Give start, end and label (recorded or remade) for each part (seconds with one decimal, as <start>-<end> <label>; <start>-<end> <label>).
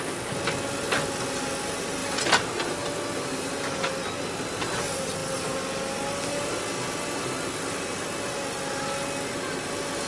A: 0.0-10.1 recorded